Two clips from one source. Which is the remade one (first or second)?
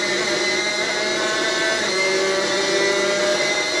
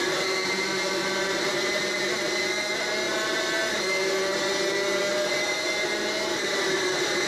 second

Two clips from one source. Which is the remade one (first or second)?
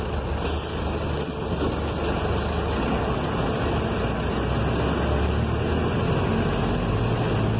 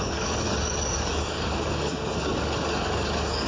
second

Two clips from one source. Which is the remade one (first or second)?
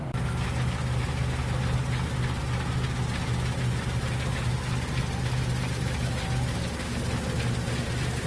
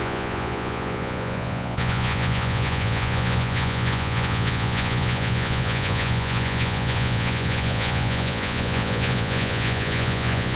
second